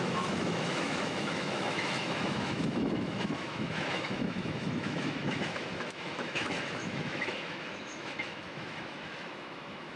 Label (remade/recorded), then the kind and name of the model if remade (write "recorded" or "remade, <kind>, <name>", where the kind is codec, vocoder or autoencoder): remade, autoencoder, DAC-VAE